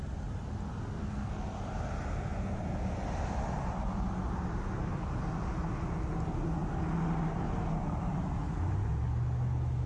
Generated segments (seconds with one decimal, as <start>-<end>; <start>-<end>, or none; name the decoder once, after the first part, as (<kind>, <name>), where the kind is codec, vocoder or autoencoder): 1.0-1.6 (codec, SNAC)